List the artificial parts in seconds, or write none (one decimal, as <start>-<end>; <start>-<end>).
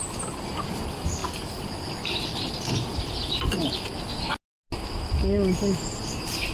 none